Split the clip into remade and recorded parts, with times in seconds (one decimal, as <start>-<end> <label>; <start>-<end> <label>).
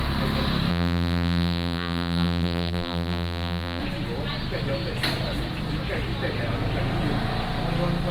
0.0-0.7 recorded; 0.7-3.8 remade; 3.8-8.1 recorded